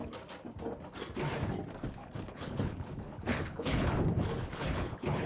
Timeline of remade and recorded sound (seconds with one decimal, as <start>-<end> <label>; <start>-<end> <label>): 0.0-2.0 recorded; 2.0-5.3 remade